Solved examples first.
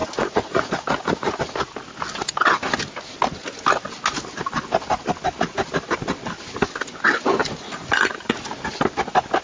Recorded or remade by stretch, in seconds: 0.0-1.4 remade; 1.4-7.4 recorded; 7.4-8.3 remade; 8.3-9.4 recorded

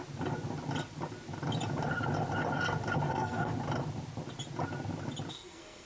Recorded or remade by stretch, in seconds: 0.0-3.1 recorded; 3.1-3.5 remade; 3.5-5.3 recorded; 5.3-5.9 remade

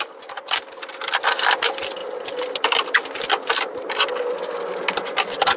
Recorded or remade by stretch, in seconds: 0.0-5.6 recorded

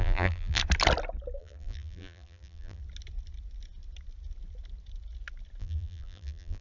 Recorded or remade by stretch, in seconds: 0.0-0.6 remade; 0.6-1.4 recorded; 1.4-2.8 remade; 2.8-5.6 recorded; 5.6-6.6 remade

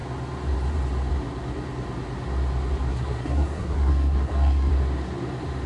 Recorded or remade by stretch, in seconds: 0.0-2.9 recorded; 2.9-4.7 remade; 4.7-5.7 recorded